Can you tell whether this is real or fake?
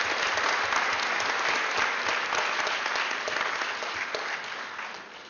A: real